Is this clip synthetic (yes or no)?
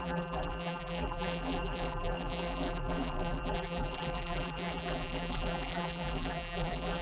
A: yes